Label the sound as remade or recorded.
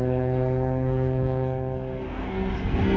remade